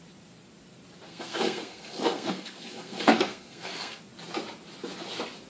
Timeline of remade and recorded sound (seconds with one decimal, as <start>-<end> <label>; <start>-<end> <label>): 0.0-1.1 recorded; 1.1-4.0 remade; 4.0-5.5 recorded